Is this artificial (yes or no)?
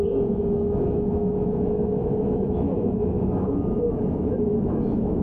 yes